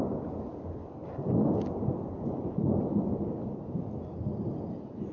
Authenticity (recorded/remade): recorded